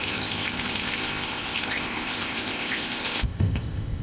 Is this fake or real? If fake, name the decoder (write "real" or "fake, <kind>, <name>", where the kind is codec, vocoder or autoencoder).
fake, codec, ZipCodec